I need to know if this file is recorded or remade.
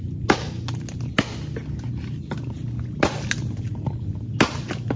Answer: recorded